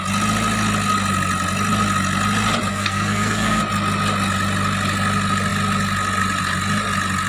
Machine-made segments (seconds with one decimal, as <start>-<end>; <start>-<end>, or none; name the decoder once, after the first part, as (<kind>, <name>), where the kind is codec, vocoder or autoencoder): 2.7-3.6 (codec, SNAC)